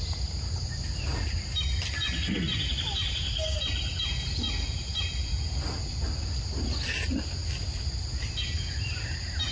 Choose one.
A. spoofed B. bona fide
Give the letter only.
B